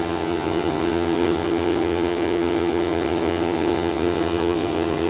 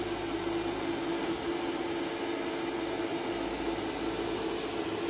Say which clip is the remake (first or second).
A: first